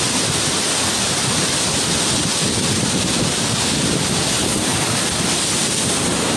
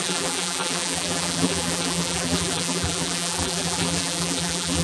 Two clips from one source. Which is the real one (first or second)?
first